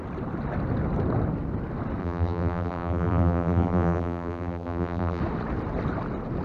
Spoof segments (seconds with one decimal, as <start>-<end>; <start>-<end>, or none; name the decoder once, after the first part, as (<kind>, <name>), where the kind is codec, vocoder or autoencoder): 2.0-5.2 (vocoder, BigVGAN v2)